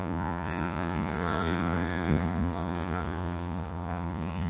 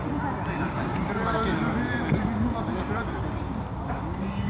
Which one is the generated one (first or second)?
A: first